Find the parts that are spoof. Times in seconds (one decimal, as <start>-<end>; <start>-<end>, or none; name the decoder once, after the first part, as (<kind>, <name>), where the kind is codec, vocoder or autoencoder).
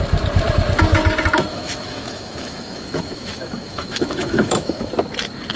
1.5-4.9 (autoencoder, DAC-VAE)